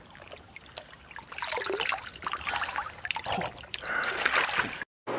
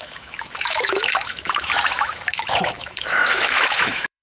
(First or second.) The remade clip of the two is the second